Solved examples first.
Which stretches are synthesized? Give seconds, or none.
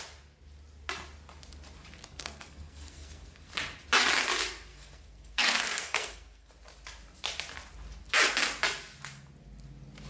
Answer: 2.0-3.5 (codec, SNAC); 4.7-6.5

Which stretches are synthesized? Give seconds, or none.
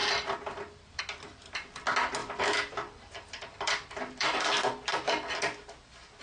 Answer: 0.0-1.0 (vocoder, BigVGAN v2); 2.2-5.1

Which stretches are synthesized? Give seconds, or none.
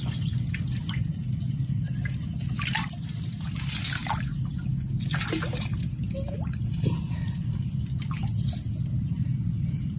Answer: none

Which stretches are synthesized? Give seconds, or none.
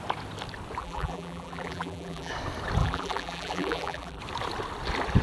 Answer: 0.8-2.3 (vocoder, BigVGAN v2); 2.8-4.2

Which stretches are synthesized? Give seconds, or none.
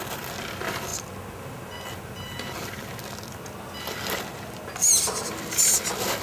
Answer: none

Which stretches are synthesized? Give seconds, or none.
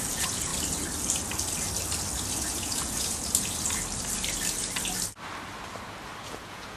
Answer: 0.0-0.5 (vocoder, Vocos); 2.3-3.2; 6.2-6.8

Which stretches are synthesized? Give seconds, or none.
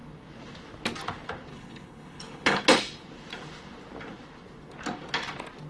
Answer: 1.5-2.6 (codec, HILCodec)